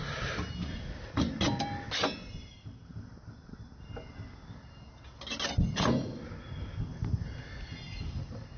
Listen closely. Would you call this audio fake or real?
real